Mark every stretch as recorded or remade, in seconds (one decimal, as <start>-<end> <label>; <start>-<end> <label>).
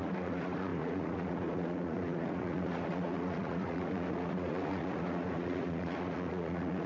0.0-6.9 remade